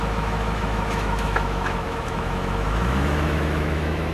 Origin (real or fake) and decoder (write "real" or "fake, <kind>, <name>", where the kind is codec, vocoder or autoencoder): fake, autoencoder, DAC-VAE